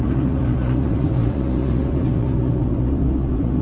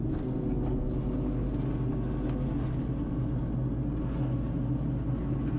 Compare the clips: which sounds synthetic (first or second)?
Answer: first